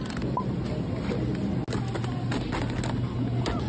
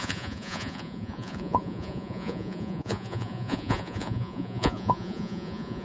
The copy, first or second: second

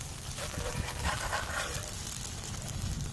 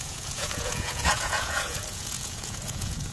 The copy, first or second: second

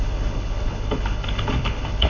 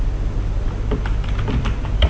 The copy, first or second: first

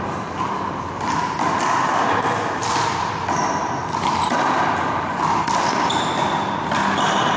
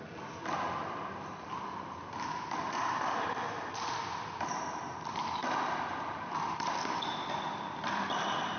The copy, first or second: second